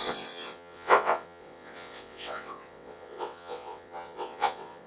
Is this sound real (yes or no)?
no